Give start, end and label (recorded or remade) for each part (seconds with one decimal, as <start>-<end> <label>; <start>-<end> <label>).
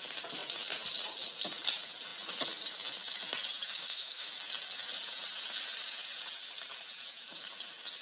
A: 0.0-3.8 recorded; 3.8-4.3 remade; 4.3-8.0 recorded